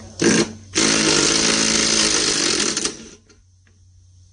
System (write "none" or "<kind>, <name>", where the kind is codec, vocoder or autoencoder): none